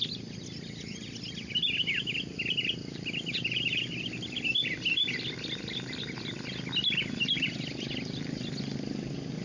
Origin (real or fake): real